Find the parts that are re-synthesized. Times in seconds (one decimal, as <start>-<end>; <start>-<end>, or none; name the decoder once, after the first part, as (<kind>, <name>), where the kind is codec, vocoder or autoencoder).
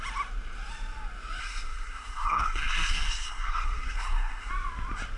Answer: 1.4-4.5 (codec, SNAC)